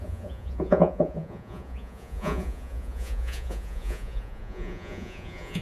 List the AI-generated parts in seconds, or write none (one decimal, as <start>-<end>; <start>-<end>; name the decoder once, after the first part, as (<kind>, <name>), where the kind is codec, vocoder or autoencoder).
0.0-5.6 (vocoder, Vocos)